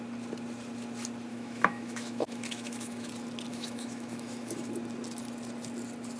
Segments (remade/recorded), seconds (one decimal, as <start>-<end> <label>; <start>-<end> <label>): 0.0-1.3 recorded; 1.3-3.1 remade; 3.1-3.5 recorded; 3.5-4.7 remade; 4.7-6.2 recorded